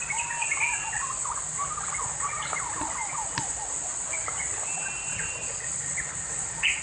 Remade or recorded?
recorded